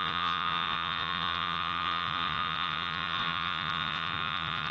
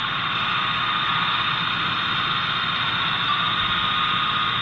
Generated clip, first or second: first